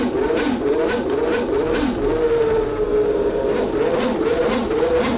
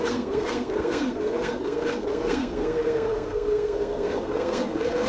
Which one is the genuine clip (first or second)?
first